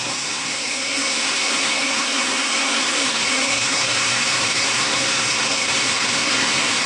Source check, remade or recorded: remade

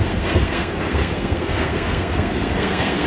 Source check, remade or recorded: remade